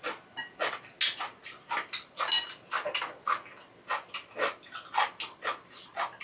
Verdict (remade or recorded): recorded